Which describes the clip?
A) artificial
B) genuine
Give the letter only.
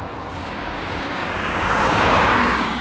A